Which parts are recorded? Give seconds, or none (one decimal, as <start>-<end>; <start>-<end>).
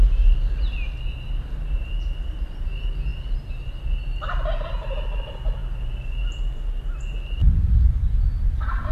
0.0-8.9